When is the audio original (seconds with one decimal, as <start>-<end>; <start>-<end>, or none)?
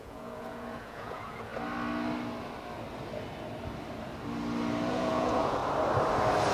1.5-4.9; 5.6-6.5